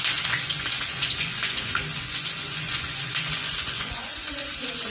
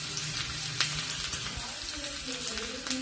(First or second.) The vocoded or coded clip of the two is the first